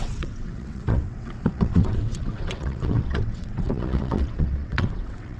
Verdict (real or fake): fake